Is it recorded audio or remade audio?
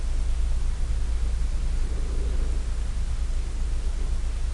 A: recorded